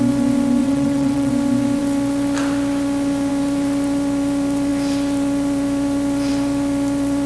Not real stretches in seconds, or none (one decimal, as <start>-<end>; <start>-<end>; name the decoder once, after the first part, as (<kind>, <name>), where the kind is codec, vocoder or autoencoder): 0.6-1.3 (vocoder, WaveNeXt)